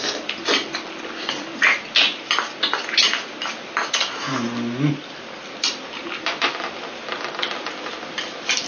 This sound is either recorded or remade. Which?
recorded